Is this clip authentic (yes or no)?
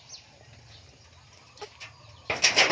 yes